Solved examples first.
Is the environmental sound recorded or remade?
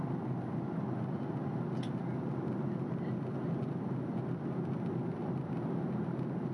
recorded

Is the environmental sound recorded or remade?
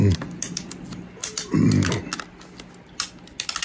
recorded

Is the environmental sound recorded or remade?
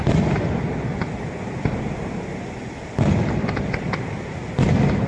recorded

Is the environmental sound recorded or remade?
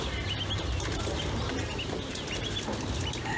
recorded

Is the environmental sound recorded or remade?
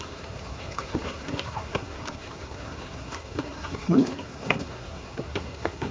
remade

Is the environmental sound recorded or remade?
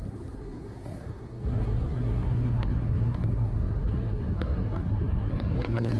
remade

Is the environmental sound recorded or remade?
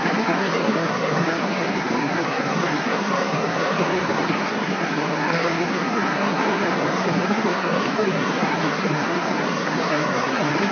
remade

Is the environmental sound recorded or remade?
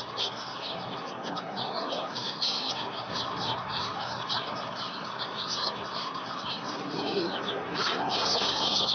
remade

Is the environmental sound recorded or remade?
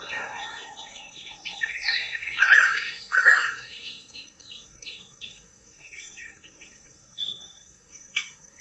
remade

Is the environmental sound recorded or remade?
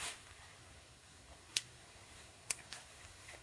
remade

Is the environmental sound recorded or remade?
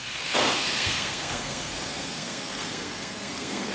remade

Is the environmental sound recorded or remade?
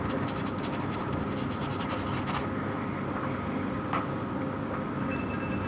recorded